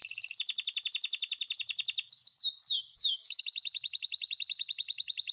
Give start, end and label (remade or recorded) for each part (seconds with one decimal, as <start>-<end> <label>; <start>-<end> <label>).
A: 0.0-2.9 recorded; 2.9-3.4 remade; 3.4-5.3 recorded